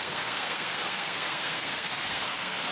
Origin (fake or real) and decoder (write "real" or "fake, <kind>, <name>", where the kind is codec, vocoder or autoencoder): fake, codec, SNAC